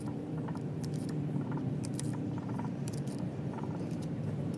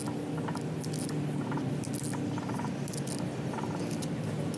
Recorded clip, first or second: second